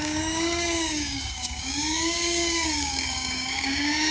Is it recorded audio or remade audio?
remade